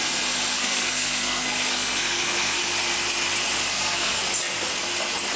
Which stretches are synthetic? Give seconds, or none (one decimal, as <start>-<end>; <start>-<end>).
0.5-2.6; 3.7-4.2